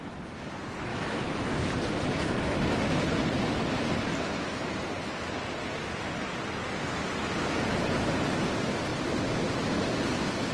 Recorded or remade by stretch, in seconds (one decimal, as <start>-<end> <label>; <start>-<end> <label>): 0.0-0.9 recorded; 0.9-1.6 remade; 1.6-10.5 recorded